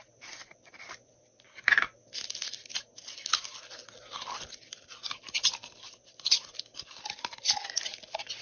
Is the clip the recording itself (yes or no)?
yes